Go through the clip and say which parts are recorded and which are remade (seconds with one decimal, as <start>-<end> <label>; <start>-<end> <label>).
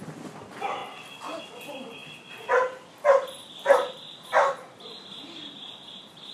0.0-6.3 recorded